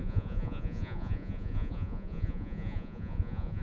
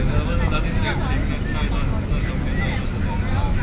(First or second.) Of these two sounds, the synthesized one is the first